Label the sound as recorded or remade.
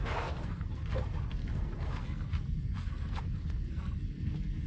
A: remade